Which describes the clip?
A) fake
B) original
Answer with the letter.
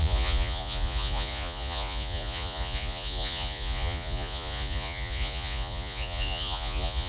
A